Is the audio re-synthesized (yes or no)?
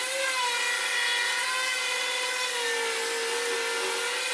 no